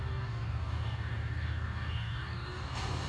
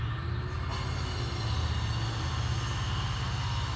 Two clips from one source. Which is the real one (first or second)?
second